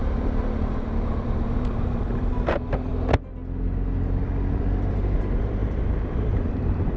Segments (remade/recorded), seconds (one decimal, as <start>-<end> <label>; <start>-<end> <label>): 0.0-0.7 recorded; 0.7-2.9 remade; 2.9-4.9 recorded; 4.9-7.0 remade